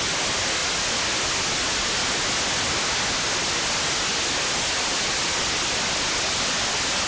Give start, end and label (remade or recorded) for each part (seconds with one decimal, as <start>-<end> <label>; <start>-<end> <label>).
0.0-7.1 recorded